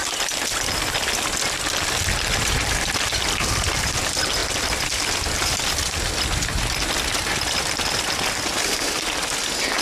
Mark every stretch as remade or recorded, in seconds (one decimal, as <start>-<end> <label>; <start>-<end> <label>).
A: 0.0-9.8 recorded